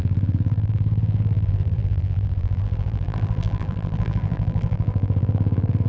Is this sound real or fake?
fake